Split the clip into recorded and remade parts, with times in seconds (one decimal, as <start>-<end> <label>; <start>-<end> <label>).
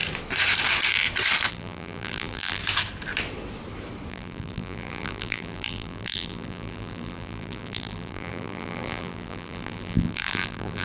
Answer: 0.0-1.5 recorded; 1.5-2.6 remade; 2.6-4.1 recorded; 4.1-10.8 remade